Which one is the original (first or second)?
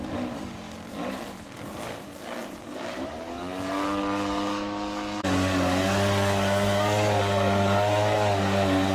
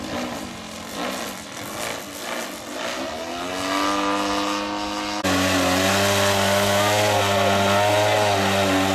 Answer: second